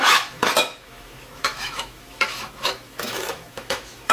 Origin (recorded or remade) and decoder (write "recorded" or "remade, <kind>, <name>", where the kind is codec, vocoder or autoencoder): remade, autoencoder, DAC-VAE